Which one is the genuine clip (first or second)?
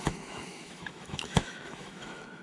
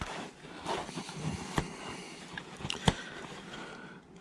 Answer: second